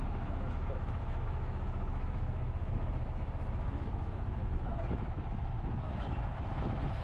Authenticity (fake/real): fake